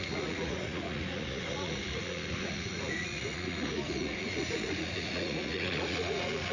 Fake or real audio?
fake